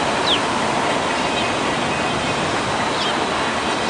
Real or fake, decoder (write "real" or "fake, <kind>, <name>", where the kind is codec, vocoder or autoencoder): real